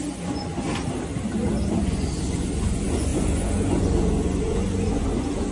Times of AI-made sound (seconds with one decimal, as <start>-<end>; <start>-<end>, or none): 0.0-0.5; 1.7-5.5